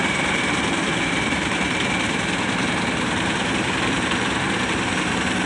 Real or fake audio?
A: fake